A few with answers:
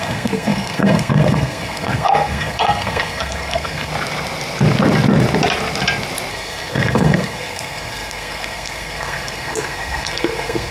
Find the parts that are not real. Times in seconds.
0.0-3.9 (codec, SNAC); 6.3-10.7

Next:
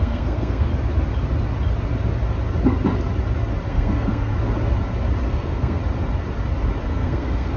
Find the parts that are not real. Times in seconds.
0.0-0.7 (codec, SNAC); 3.7-4.3; 5.3-5.8; 6.9-7.6

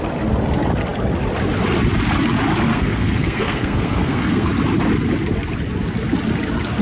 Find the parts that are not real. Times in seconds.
2.7-4.5 (codec, SNAC)

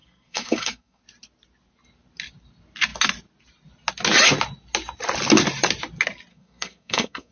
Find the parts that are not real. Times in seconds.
0.0-1.0 (codec, SNAC); 6.3-7.3

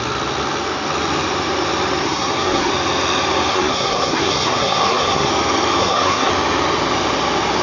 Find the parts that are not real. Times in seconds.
2.0-2.7 (codec, SNAC); 3.5-5.3; 5.8-6.3

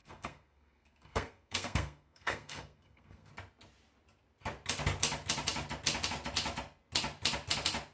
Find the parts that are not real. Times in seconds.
0.0-3.3 (codec, SNAC)

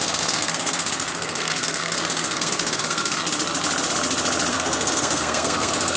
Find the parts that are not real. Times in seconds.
0.0-3.2 (codec, SNAC); 4.5-6.0